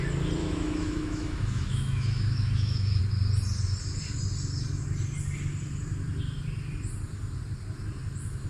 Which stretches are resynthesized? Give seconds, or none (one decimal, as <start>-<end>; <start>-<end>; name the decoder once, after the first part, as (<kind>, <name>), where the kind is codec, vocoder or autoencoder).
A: 0.4-3.0 (autoencoder, DAC-VAE)

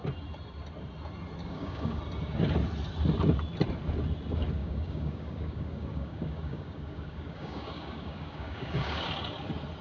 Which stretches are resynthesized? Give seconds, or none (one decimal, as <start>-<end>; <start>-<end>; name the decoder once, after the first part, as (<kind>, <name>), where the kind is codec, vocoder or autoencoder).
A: 1.4-2.0 (codec, DAC); 4.6-9.1

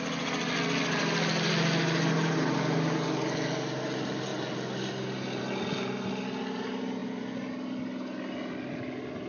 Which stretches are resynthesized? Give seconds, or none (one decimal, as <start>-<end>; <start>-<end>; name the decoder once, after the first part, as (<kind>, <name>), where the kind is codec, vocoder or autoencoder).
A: none

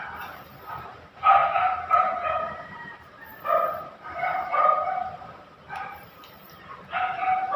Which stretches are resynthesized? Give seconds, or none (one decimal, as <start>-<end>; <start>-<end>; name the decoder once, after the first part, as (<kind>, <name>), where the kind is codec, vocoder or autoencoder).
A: 0.0-7.6 (vocoder, BigVGAN v2)

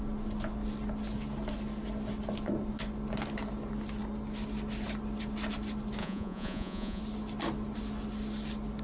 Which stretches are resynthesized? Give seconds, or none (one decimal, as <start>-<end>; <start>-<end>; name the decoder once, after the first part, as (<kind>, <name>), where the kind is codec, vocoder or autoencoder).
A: 6.0-7.0 (vocoder, Vocos)

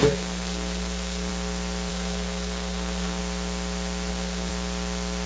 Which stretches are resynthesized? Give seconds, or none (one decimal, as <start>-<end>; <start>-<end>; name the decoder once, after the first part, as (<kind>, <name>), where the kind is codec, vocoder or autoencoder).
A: 0.0-1.3 (codec, SNAC); 1.9-3.2; 4.1-4.5

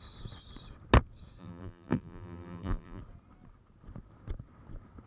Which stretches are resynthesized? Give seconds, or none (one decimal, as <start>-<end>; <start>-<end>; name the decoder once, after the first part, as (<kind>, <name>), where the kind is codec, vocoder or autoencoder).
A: 1.4-3.0 (vocoder, BigVGAN v2)